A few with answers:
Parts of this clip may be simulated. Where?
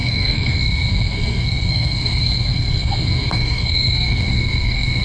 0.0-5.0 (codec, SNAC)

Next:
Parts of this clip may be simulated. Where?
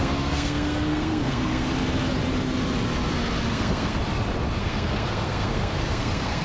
0.0-1.7 (codec, SNAC); 3.5-4.0; 4.6-6.4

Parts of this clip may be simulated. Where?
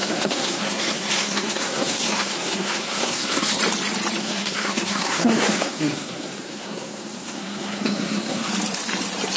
0.0-3.6 (codec, SNAC); 4.2-8.5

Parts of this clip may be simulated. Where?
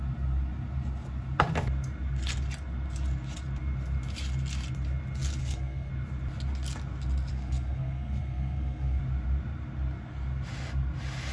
5.4-5.9 (codec, SNAC); 7.3-9.0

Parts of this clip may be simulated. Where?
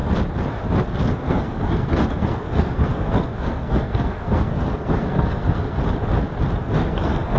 1.1-5.8 (codec, SNAC); 6.6-7.4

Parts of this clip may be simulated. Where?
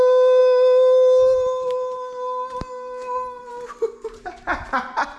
none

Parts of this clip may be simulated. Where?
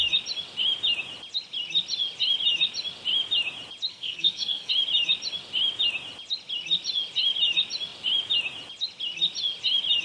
3.9-4.7 (codec, SNAC)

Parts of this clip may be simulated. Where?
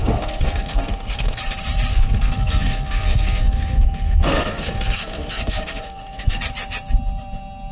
0.0-1.4 (codec, SNAC); 1.9-6.4